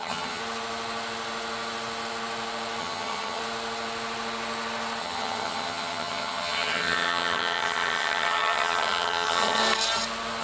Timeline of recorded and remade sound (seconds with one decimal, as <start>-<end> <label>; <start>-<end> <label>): 0.0-0.4 remade; 0.4-2.8 recorded; 2.8-3.4 remade; 3.4-5.0 recorded; 5.0-9.6 remade; 9.6-10.4 recorded